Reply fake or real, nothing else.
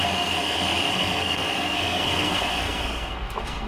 fake